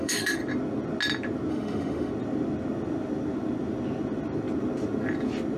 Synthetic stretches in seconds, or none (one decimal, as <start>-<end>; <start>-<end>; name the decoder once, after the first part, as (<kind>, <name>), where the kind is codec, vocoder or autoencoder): 0.0-0.4 (autoencoder, DAC-VAE); 1.5-2.1